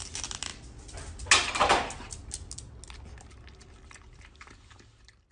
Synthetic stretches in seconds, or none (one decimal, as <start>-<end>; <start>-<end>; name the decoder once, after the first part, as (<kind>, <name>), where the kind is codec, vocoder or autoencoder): none